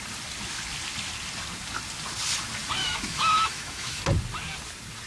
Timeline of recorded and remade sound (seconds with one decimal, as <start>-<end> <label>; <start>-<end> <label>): 0.0-2.8 recorded; 2.8-4.0 remade; 4.0-5.1 recorded

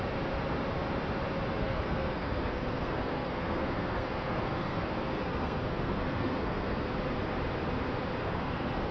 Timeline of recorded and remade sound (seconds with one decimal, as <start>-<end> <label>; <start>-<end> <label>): 0.0-1.6 recorded; 1.6-6.8 remade; 6.8-8.2 recorded; 8.2-8.9 remade

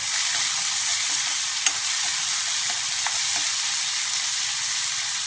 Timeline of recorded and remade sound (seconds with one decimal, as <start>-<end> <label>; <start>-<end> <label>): 0.0-5.3 recorded

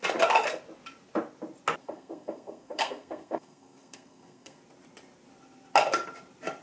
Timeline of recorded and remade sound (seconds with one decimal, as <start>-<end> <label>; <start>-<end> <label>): 0.0-1.8 recorded; 1.8-4.6 remade; 4.6-6.6 recorded

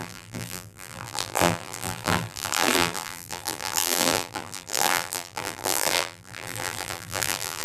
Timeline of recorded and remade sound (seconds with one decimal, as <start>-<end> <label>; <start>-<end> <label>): 0.0-7.6 remade

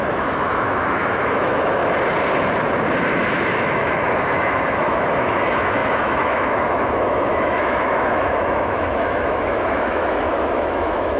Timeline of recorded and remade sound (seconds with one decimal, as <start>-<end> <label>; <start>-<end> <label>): 0.0-1.8 remade; 1.8-3.2 recorded; 3.2-11.2 remade

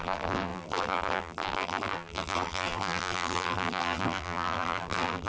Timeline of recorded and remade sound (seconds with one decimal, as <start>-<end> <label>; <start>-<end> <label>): 0.0-5.3 remade